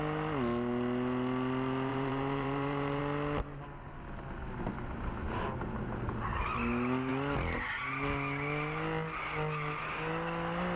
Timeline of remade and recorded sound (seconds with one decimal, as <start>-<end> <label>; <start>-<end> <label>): 0.0-1.9 recorded; 1.9-3.0 remade; 3.0-10.8 recorded